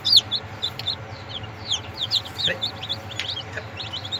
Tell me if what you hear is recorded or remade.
recorded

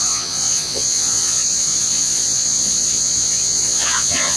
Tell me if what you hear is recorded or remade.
remade